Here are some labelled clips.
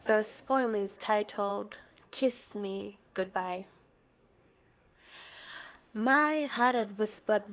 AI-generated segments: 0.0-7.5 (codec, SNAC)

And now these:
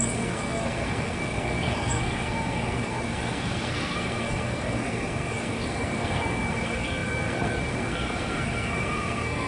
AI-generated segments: 0.0-9.5 (codec, SNAC)

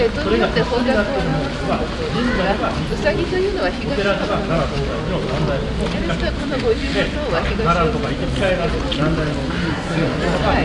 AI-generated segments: 9.7-10.2 (codec, SNAC)

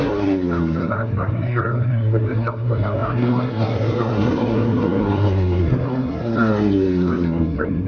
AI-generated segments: 0.0-7.9 (codec, SNAC)

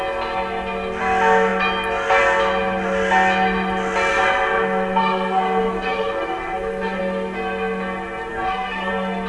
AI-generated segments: 4.1-7.0 (codec, SNAC); 8.3-8.9